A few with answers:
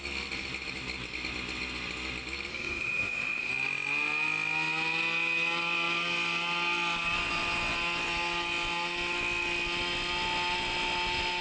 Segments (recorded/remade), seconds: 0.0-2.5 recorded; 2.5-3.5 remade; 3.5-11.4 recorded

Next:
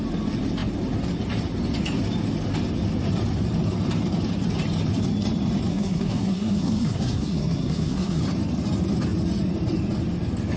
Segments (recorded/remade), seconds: 0.0-5.7 recorded; 5.7-8.2 remade; 8.2-10.6 recorded

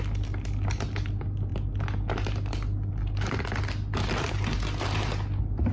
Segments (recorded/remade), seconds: 0.0-5.7 recorded

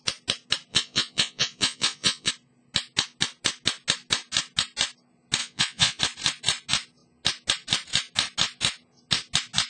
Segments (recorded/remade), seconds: 0.0-0.7 recorded; 0.7-2.3 remade; 2.3-5.4 recorded; 5.4-6.0 remade; 6.0-9.7 recorded

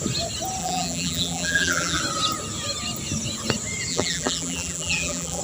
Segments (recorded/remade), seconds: 0.0-0.6 recorded; 0.6-2.0 remade; 2.0-3.9 recorded; 3.9-5.4 remade

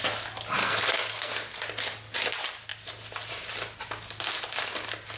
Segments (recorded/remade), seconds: 0.0-0.6 recorded; 0.6-1.3 remade; 1.3-5.2 recorded